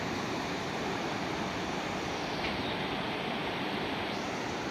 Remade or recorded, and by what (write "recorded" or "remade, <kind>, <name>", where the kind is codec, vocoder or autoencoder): remade, vocoder, BigVGAN v2